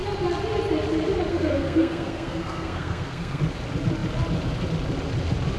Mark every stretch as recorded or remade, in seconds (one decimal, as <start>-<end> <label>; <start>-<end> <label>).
0.0-1.3 recorded; 1.3-3.4 remade; 3.4-5.6 recorded